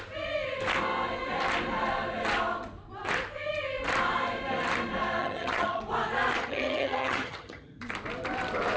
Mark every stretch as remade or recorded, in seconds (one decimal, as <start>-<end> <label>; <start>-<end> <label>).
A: 0.0-5.2 recorded; 5.2-5.8 remade; 5.8-6.4 recorded; 6.4-7.8 remade; 7.8-8.8 recorded